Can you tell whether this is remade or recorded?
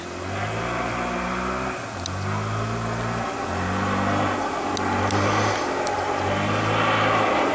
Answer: recorded